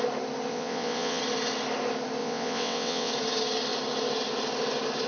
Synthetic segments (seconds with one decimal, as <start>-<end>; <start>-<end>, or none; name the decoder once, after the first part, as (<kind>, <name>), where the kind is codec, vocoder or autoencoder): 0.5-1.2 (vocoder, WaveNeXt); 2.2-3.1